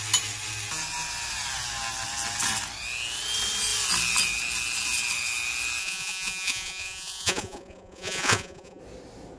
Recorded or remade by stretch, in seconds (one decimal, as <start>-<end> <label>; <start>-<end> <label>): 0.0-5.8 recorded; 5.8-8.8 remade; 8.8-9.4 recorded